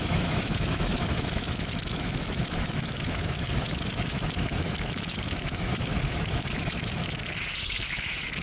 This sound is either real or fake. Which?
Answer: fake